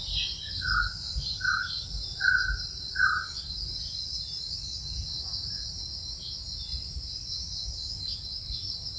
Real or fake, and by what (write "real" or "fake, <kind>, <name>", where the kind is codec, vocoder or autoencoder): real